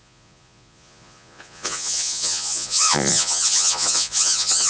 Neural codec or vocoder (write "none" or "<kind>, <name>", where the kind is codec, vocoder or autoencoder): vocoder, Vocos